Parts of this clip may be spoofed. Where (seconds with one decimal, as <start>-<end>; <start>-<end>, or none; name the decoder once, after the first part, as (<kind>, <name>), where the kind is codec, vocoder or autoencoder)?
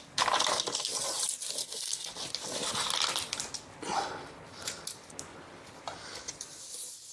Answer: 1.6-2.1 (codec, SNAC)